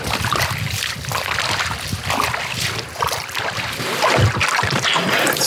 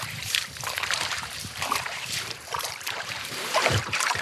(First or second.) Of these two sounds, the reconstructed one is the second